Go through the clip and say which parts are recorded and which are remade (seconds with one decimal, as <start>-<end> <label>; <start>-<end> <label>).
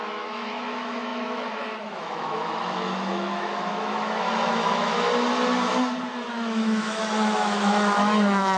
0.0-4.9 remade; 4.9-6.3 recorded; 6.3-8.6 remade